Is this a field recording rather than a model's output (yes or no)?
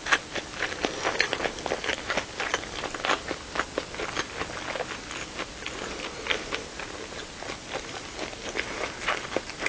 yes